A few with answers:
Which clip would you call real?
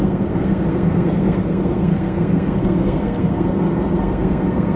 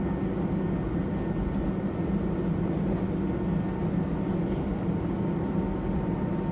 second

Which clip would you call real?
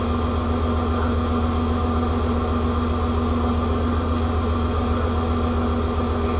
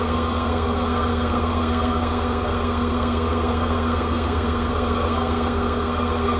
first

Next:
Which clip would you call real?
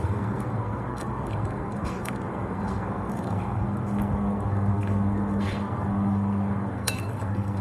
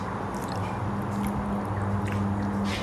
second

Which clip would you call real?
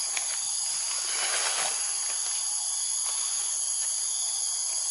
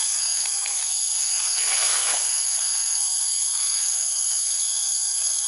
first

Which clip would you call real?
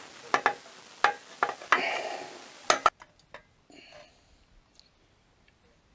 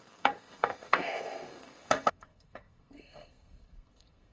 first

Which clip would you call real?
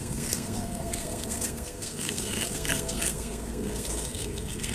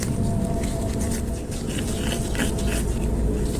second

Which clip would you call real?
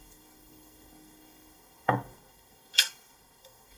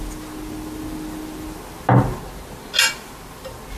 second